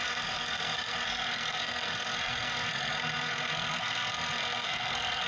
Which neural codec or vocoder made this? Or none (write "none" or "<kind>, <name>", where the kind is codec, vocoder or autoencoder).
codec, SNAC